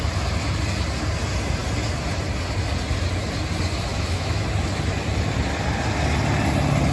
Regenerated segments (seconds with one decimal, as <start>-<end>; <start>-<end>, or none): 3.9-4.5